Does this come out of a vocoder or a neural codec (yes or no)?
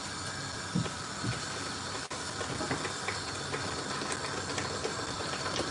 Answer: no